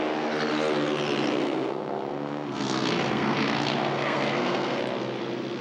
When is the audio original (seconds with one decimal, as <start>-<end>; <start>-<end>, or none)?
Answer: 0.0-1.4; 4.8-5.6